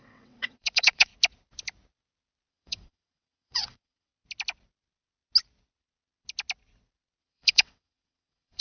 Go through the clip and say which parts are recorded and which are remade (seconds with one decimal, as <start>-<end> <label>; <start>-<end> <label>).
0.0-1.1 remade; 1.1-2.5 recorded; 2.5-4.1 remade; 4.1-7.2 recorded; 7.2-8.6 remade